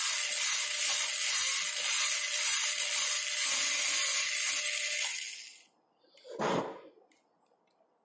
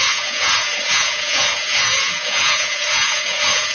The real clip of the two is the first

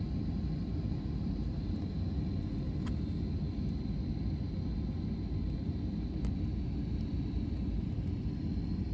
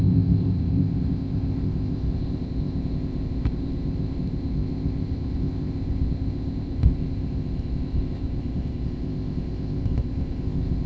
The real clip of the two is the first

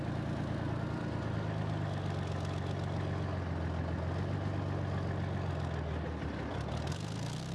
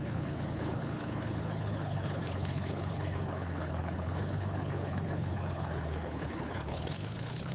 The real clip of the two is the first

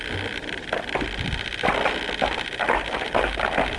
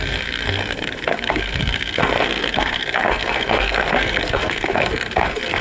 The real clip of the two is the first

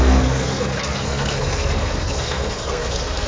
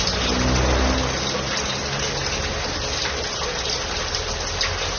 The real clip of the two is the second